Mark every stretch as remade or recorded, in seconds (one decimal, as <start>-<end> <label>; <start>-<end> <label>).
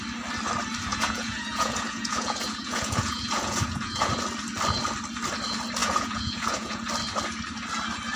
0.0-0.9 recorded; 0.9-4.1 remade; 4.1-5.8 recorded; 5.8-6.8 remade; 6.8-8.2 recorded